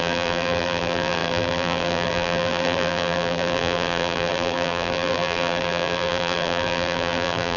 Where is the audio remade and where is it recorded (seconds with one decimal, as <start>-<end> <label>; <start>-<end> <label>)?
0.0-7.6 remade